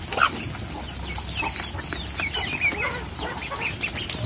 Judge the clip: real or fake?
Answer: real